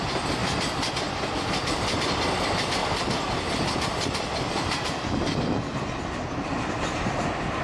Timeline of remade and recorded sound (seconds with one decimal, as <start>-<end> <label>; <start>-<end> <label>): 0.0-2.8 remade; 2.8-4.0 recorded; 4.0-7.6 remade